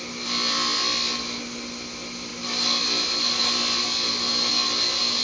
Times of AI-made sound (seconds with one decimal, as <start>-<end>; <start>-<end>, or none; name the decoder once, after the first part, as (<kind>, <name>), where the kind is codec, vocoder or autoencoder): none